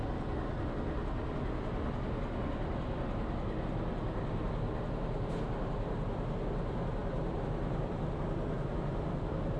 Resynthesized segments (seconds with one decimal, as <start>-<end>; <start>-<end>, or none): 7.0-8.2